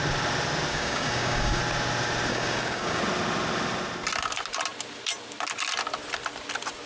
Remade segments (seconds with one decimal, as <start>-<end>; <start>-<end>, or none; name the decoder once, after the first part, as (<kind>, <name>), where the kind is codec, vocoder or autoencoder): 0.7-1.6 (codec, DAC); 2.3-3.0